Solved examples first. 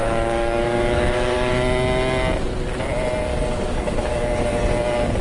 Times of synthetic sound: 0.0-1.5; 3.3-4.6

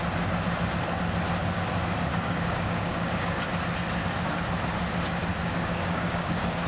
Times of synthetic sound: 2.1-3.4; 5.3-6.3

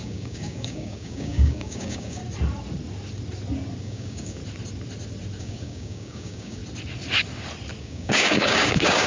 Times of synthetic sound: 0.0-2.2; 3.8-4.4; 5.4-6.6; 7.8-9.1

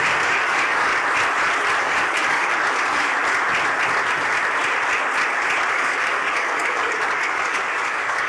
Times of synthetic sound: 0.0-0.9; 1.8-3.1; 5.7-8.3

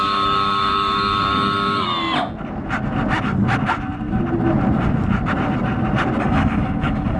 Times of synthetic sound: 0.0-1.9; 6.2-7.2